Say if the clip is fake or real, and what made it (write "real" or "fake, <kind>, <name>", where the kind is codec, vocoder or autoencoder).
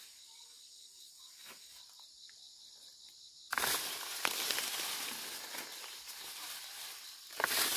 real